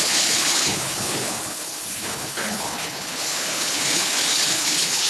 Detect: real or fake fake